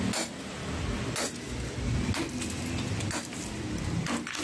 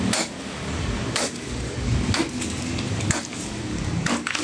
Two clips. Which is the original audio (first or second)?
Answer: first